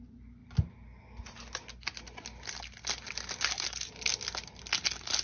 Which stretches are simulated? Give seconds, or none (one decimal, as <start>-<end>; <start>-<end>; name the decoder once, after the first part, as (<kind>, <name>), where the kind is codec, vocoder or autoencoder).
none